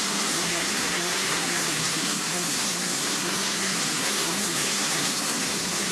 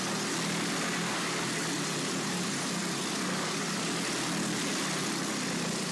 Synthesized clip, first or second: first